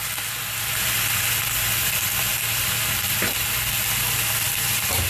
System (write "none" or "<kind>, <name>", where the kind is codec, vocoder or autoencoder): none